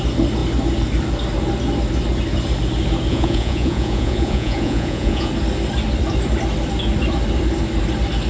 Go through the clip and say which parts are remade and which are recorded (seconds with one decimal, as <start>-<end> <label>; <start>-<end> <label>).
0.0-3.1 recorded; 3.1-5.3 remade; 5.3-8.3 recorded